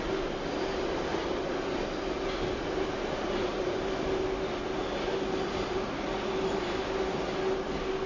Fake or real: real